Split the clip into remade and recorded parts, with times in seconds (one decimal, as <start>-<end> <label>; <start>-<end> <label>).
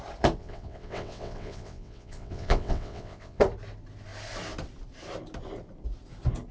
0.0-0.4 recorded; 0.4-3.4 remade; 3.4-6.5 recorded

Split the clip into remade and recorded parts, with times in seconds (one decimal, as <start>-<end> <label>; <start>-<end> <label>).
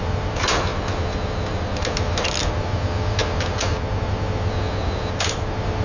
0.0-5.8 recorded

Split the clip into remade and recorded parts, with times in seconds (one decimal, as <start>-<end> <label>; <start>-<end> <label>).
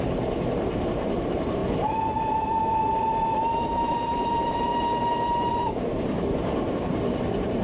0.0-1.6 remade; 1.6-2.3 recorded; 2.3-4.7 remade; 4.7-5.5 recorded; 5.5-7.6 remade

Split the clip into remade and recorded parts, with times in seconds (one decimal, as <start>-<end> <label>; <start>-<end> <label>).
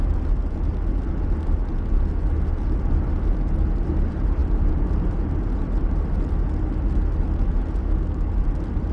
0.0-7.8 recorded; 7.8-8.3 remade; 8.3-8.9 recorded